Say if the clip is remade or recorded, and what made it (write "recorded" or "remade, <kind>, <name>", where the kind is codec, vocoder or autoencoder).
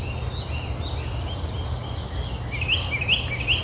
recorded